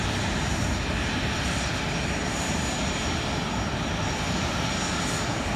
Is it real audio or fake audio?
real